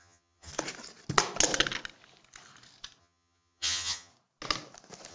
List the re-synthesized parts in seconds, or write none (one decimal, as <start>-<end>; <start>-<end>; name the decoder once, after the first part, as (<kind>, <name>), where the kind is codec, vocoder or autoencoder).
0.0-0.5 (vocoder, HiFi-GAN); 3.0-4.1